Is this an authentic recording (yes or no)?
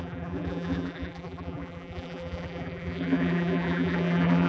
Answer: no